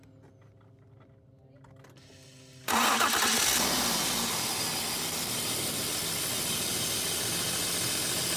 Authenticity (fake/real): real